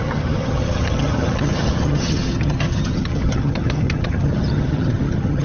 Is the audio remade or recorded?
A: remade